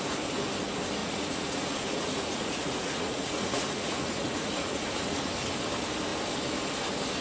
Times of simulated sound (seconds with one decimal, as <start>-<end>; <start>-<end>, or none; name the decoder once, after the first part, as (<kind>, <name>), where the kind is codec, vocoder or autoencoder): 1.0-5.3 (vocoder, Vocos)